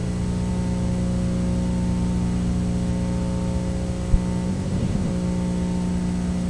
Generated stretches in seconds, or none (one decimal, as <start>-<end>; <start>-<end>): 4.5-5.1